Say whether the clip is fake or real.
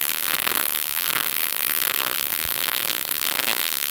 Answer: fake